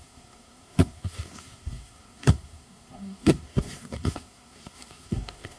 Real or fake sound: fake